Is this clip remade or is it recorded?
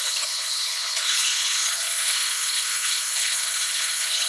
remade